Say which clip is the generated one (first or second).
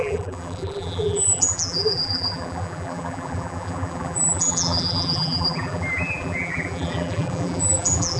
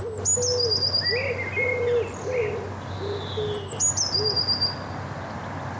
first